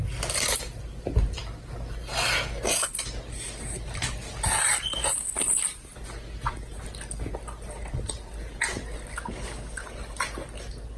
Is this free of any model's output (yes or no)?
yes